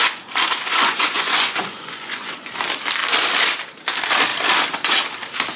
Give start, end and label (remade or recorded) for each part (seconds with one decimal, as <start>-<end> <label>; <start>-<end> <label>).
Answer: 0.0-2.5 remade; 2.5-5.6 recorded